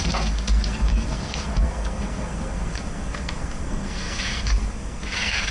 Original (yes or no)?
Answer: no